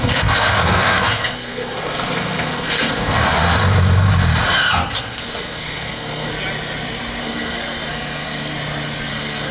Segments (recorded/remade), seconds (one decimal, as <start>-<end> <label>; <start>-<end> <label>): 0.0-3.2 remade; 3.2-5.0 recorded; 5.0-6.3 remade; 6.3-7.2 recorded; 7.2-8.5 remade; 8.5-9.1 recorded; 9.1-9.5 remade